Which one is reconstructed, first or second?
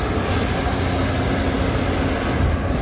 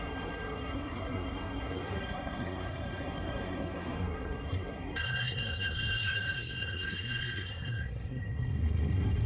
second